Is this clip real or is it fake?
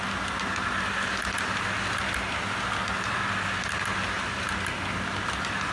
real